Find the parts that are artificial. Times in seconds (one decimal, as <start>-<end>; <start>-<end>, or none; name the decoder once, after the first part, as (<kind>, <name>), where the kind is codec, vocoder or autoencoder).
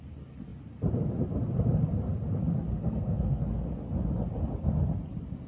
2.7-3.4 (codec, SNAC)